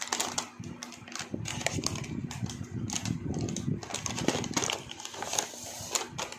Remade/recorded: recorded